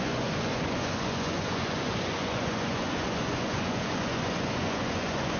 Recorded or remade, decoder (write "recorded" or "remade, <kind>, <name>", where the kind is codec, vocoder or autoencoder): remade, vocoder, Vocos